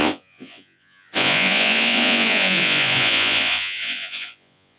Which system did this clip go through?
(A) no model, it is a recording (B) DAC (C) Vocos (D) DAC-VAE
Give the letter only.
C